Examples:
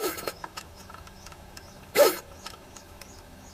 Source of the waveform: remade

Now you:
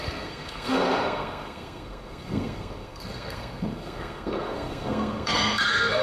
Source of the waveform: remade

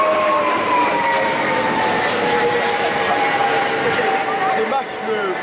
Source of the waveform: recorded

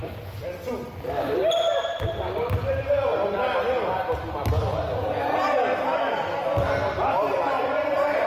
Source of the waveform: remade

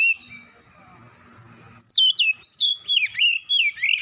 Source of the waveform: recorded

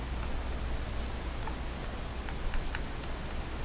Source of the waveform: recorded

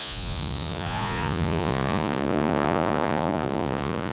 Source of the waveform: remade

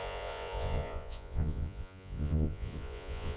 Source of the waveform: remade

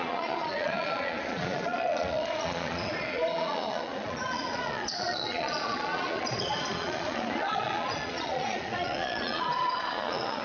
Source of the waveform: remade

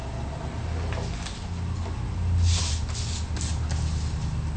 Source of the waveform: recorded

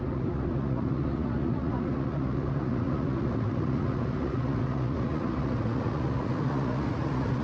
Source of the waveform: remade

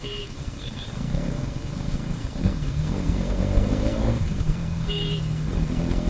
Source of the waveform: remade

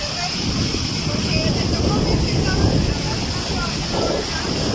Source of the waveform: recorded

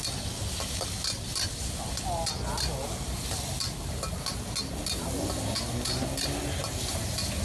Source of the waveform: recorded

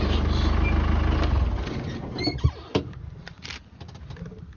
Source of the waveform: recorded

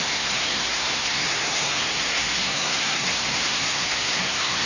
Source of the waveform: remade